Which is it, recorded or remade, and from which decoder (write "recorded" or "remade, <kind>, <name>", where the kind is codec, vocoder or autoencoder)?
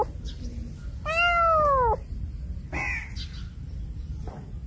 recorded